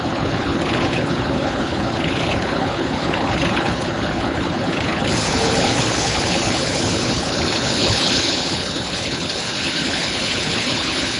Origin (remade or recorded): remade